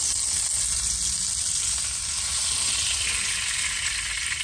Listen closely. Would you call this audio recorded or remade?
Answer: recorded